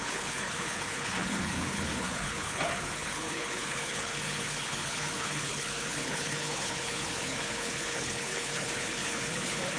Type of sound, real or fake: fake